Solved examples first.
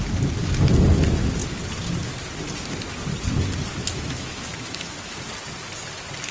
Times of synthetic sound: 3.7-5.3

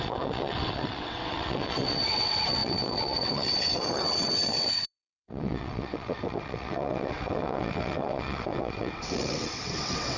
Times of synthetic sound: 0.0-10.2

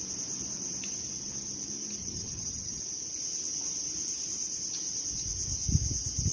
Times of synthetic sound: 2.0-2.8

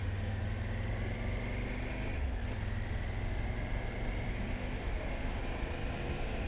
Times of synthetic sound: 0.0-0.4; 4.3-5.4

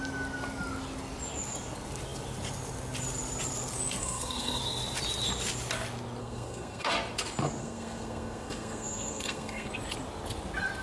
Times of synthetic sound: 4.0-4.6; 6.2-6.9; 7.6-9.7

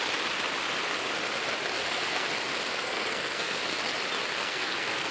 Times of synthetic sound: 1.8-2.3; 2.7-3.6; 4.4-5.1

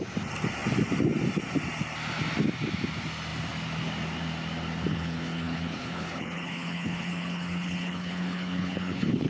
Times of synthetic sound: 4.9-9.3

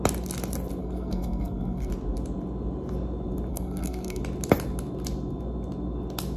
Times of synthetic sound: 0.8-1.9; 3.5-4.2